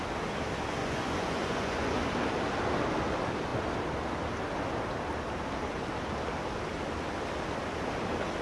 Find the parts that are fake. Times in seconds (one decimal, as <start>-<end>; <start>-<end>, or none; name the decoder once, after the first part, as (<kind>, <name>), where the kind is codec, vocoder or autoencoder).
0.8-2.0 (vocoder, Vocos)